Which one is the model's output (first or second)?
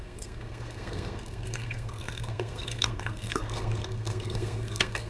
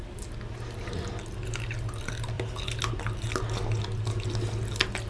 first